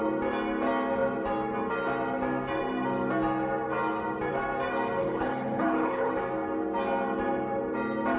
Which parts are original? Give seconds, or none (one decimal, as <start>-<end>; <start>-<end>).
0.0-5.0; 6.1-8.2